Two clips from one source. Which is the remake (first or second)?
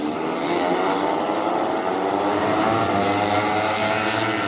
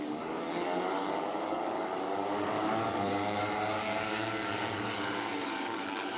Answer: second